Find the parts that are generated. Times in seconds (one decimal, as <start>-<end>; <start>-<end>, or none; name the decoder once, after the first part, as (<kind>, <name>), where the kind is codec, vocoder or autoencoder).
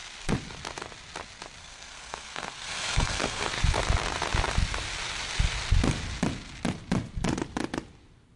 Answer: 1.6-3.5 (codec, SNAC)